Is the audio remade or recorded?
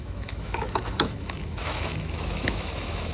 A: remade